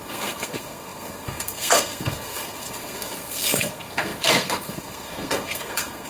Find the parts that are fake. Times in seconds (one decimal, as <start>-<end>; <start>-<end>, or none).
0.0-6.1